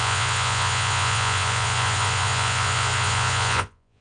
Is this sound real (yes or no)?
no